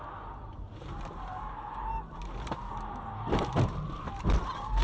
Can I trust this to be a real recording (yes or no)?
yes